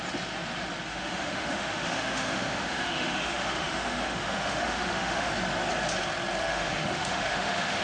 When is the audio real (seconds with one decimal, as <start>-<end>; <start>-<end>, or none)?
0.0-0.9; 5.3-6.4